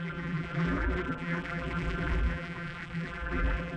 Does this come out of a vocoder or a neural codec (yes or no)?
yes